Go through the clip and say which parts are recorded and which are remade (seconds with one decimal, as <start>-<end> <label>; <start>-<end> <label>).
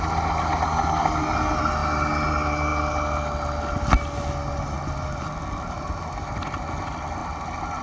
0.0-7.8 recorded